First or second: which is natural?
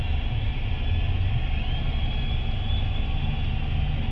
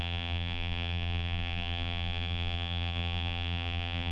first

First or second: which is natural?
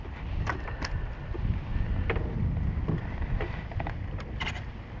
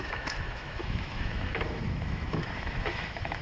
first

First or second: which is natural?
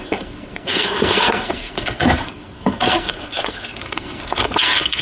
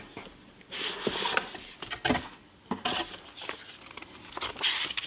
second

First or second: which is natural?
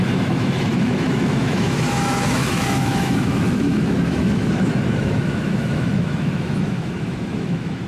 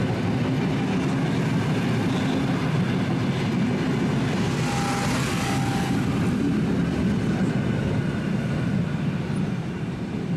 second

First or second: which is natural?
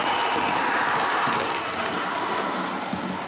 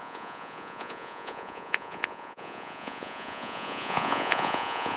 first